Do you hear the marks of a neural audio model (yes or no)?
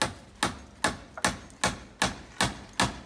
no